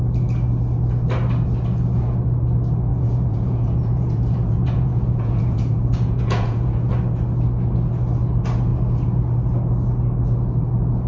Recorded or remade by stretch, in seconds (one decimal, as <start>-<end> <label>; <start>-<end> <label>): 0.0-2.9 recorded; 2.9-6.9 remade; 6.9-11.1 recorded